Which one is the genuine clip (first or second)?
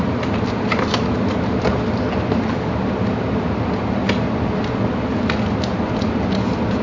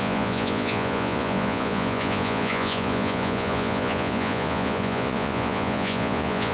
first